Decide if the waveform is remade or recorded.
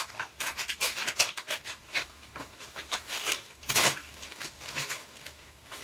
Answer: remade